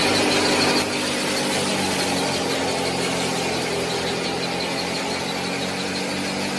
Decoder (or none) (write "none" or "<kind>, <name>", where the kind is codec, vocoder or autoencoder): none